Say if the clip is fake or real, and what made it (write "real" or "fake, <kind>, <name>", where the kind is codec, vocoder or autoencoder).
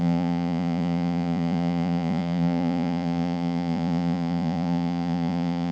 fake, vocoder, Vocos